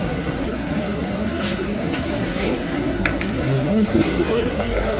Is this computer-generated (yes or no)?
yes